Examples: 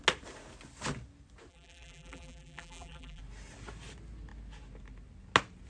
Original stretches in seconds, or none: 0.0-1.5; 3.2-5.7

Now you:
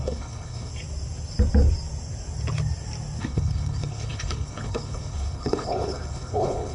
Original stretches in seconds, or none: 0.7-3.2

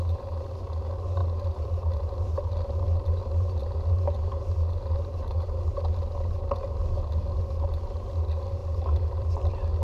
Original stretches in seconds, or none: 0.0-8.6; 9.3-9.8

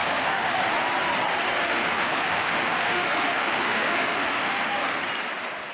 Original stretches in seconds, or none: 0.6-1.6; 5.0-5.7

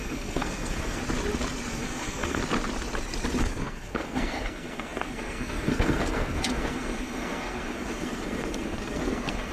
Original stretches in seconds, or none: 1.0-1.7; 2.4-3.4

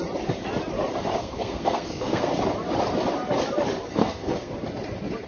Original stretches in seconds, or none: 0.0-1.2; 2.3-4.0; 4.5-5.3